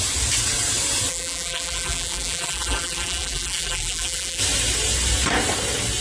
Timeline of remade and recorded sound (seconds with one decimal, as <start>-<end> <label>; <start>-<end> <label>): 0.0-1.1 recorded; 1.1-4.4 remade; 4.4-6.0 recorded